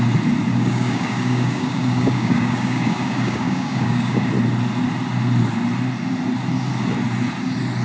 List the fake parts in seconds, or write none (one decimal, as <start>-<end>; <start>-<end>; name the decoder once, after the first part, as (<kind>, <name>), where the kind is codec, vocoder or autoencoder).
0.5-4.3 (codec, DAC)